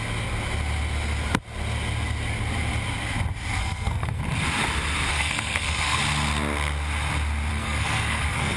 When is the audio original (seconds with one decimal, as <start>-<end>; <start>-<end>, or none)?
0.0-3.6; 4.2-5.1; 6.0-7.5